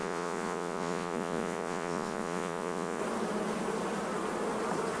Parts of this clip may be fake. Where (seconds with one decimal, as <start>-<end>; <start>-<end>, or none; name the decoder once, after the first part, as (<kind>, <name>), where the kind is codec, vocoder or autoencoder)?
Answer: 0.0-3.0 (vocoder, Vocos)